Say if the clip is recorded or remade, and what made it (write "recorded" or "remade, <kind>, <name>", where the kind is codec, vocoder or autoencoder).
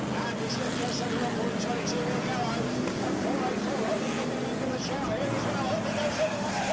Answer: recorded